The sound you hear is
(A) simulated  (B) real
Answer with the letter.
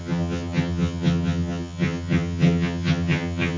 A